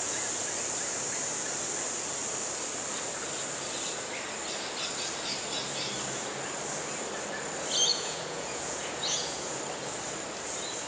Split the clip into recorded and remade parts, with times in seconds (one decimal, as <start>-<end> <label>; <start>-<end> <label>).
0.0-7.9 recorded; 7.9-9.6 remade; 9.6-10.9 recorded